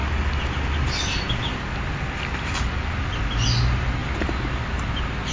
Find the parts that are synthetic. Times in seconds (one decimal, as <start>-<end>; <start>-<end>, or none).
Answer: none